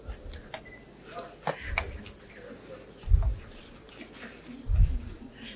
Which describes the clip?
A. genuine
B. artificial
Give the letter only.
A